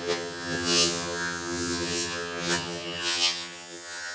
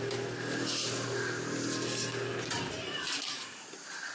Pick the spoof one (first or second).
first